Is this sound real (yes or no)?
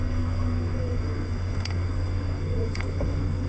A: no